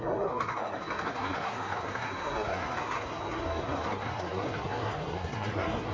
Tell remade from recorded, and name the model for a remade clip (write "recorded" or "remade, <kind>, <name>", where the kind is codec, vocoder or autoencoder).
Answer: remade, codec, SNAC